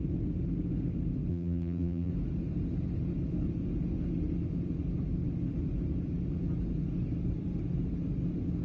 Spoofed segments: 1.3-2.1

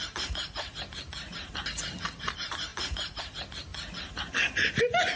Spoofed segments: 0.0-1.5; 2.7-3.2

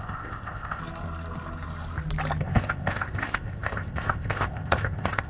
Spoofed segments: 0.0-0.8; 2.4-5.3

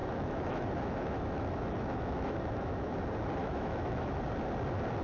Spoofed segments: 0.0-3.0; 3.4-4.2

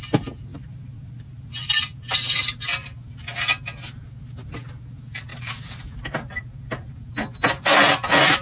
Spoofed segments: 0.5-1.2; 5.3-6.3